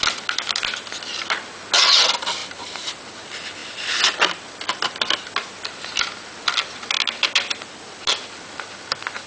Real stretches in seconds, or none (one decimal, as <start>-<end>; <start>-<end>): 0.0-9.3